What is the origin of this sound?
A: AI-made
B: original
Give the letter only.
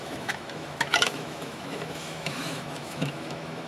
A